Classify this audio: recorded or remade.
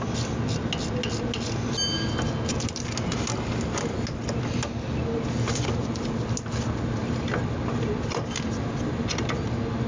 recorded